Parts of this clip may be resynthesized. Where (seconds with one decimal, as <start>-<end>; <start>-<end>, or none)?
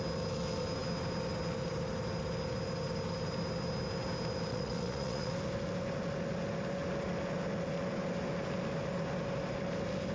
4.5-5.3